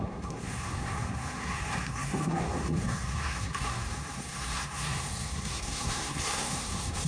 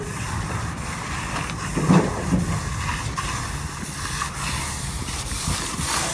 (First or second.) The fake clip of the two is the first